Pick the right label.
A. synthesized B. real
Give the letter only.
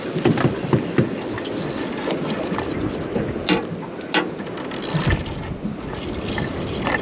B